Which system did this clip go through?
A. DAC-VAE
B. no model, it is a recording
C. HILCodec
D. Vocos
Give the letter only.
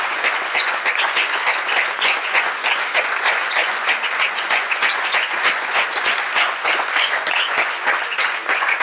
D